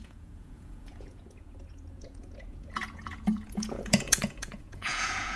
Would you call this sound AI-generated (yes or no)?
yes